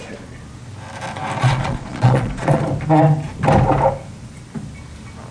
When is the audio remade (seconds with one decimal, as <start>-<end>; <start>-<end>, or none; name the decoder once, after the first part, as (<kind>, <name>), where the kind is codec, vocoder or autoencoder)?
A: 1.4-2.6 (vocoder, Vocos)